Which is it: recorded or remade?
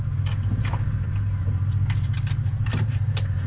remade